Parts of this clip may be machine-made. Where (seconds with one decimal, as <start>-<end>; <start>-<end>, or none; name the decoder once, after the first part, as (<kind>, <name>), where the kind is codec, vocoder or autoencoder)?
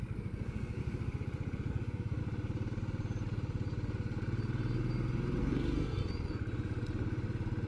0.0-0.8 (codec, SNAC); 1.7-2.2; 5.4-6.0